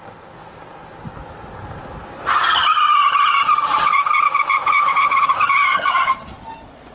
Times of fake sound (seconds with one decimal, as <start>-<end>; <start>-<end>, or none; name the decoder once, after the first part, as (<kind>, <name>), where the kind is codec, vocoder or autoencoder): 4.6-5.3 (vocoder, Vocos)